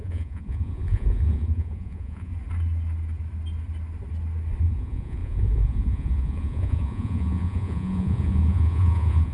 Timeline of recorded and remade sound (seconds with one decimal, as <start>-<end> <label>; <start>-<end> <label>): 0.0-2.3 remade; 2.3-4.6 recorded; 4.6-9.3 remade